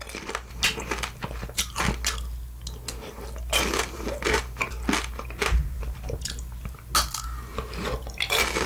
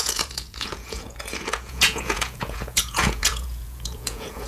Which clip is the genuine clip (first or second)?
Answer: first